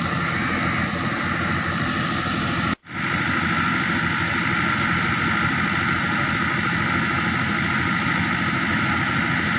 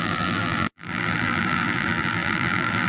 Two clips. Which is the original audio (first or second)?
first